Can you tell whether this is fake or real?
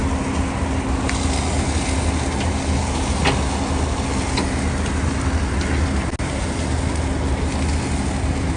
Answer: real